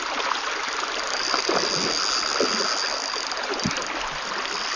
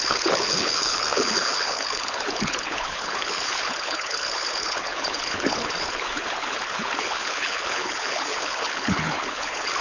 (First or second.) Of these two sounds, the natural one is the first